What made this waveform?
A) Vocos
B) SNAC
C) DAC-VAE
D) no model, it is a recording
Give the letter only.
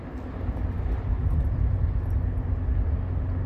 D